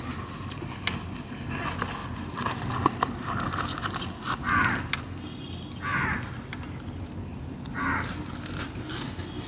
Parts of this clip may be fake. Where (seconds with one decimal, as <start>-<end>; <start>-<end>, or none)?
2.0-4.8; 7.3-7.8